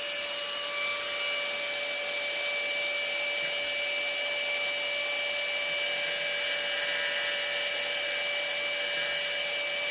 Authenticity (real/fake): real